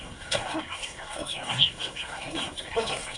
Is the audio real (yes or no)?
no